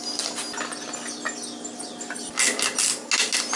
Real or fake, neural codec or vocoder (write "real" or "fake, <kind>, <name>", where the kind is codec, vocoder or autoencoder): real